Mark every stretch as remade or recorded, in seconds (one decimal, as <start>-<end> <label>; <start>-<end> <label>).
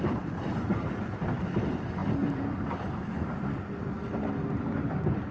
0.0-5.3 remade